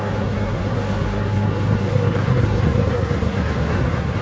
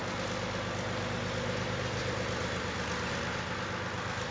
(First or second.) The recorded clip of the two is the second